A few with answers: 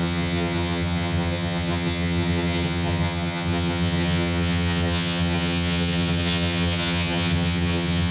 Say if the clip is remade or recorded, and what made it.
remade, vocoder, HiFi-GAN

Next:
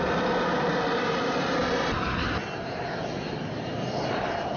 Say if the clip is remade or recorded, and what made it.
recorded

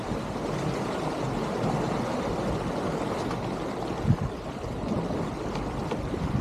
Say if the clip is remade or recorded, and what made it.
recorded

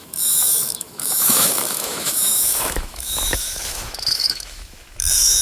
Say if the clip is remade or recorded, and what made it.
remade, autoencoder, DAC-VAE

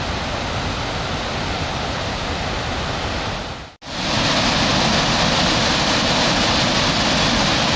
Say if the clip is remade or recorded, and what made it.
recorded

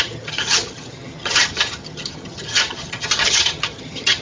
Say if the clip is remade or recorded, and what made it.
remade, vocoder, HiFi-GAN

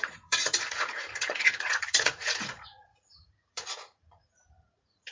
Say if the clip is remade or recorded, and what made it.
remade, vocoder, Vocos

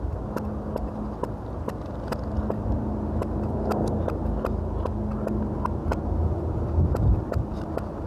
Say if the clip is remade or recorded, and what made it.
recorded